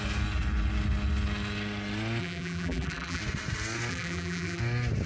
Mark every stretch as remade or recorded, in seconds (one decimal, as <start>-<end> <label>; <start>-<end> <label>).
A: 0.0-2.2 recorded; 2.2-3.2 remade; 3.2-3.9 recorded; 3.9-4.6 remade; 4.6-5.1 recorded